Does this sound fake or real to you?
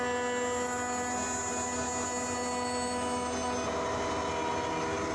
real